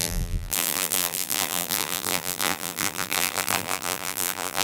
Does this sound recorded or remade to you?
remade